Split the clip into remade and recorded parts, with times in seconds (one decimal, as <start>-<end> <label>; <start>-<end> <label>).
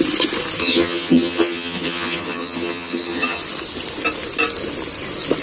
0.0-0.6 recorded; 0.6-3.4 remade; 3.4-5.4 recorded